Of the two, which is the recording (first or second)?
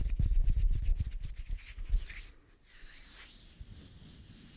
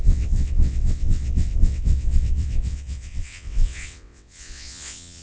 first